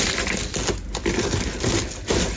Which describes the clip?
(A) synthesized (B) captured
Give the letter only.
B